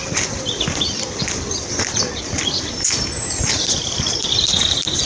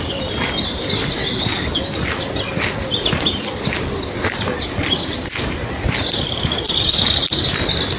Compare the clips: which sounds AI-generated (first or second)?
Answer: first